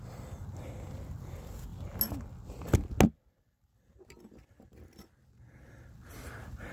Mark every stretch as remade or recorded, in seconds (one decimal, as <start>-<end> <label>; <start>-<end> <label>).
0.0-6.7 recorded